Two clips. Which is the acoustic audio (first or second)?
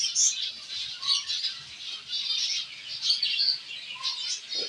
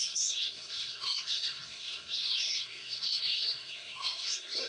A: first